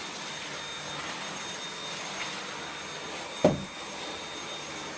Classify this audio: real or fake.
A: real